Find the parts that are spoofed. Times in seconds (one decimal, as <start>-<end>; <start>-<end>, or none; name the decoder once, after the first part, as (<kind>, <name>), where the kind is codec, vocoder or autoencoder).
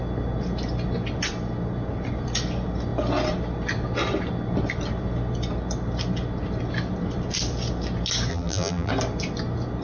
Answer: 8.3-8.9 (vocoder, BigVGAN v2)